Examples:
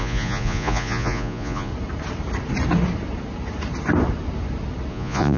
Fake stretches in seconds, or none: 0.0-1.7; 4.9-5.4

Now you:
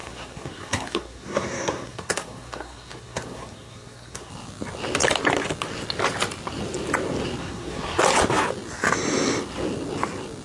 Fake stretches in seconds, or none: 0.0-4.3; 7.4-8.0

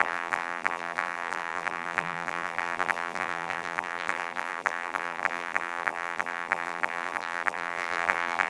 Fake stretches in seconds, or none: 0.0-8.5

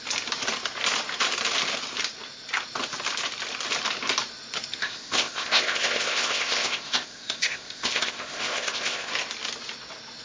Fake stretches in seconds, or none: 4.8-9.1

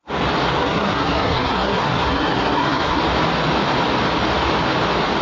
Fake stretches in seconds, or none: 0.6-3.0

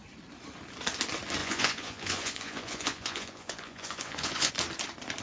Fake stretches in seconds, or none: 1.4-4.5

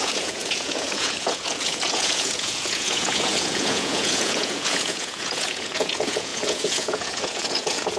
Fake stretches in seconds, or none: 0.0-8.0